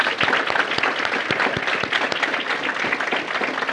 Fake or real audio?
real